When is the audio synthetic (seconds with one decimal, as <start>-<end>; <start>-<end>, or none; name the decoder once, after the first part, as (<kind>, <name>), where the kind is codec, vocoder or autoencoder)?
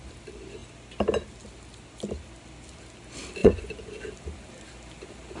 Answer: 3.4-4.0 (vocoder, Vocos)